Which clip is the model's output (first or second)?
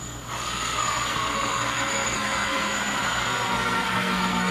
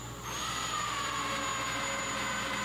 first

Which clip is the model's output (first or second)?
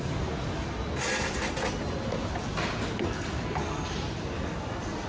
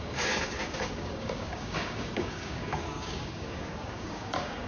second